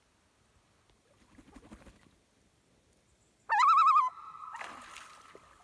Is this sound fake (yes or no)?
no